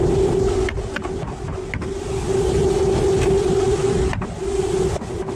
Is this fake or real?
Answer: real